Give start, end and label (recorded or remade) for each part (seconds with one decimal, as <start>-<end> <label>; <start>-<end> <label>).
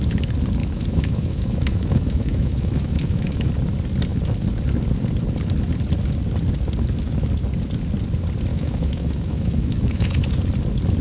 0.0-0.6 recorded; 0.6-3.5 remade; 3.5-8.5 recorded; 8.5-10.2 remade; 10.2-11.0 recorded